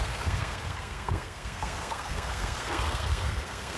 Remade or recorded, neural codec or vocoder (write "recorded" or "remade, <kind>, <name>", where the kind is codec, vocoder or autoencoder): remade, codec, SNAC